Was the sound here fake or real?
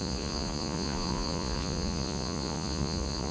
fake